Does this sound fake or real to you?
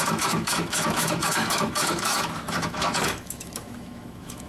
fake